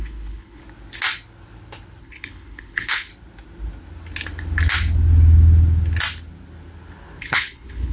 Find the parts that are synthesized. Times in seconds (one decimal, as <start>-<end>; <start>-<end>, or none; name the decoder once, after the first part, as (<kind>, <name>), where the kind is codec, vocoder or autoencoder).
0.0-0.6 (codec, HILCodec); 2.0-3.1; 7.2-7.9